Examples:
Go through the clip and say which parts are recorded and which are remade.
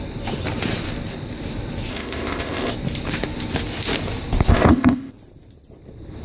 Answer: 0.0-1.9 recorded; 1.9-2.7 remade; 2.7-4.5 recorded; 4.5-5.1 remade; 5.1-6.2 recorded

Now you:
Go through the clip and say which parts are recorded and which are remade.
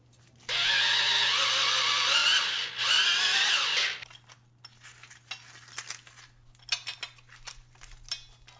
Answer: 0.0-8.6 recorded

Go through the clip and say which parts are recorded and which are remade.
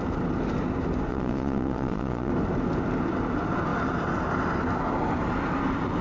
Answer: 0.0-1.1 recorded; 1.1-2.3 remade; 2.3-6.0 recorded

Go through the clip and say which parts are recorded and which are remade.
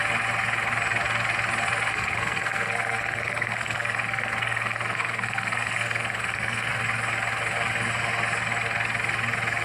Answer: 0.0-1.9 recorded; 1.9-6.7 remade; 6.7-9.6 recorded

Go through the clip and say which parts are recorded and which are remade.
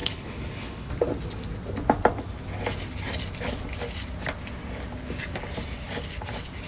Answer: 0.0-0.9 remade; 0.9-6.7 recorded